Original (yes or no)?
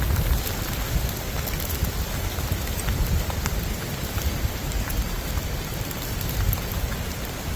yes